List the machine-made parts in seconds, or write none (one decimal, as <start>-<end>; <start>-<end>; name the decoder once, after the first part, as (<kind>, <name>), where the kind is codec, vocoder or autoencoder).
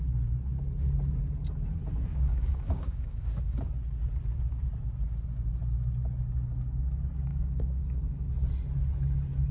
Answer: 2.1-3.7 (codec, DAC); 7.3-8.3